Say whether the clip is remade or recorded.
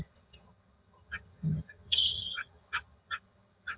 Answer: remade